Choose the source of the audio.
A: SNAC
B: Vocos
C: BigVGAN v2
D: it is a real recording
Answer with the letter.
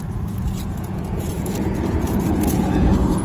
B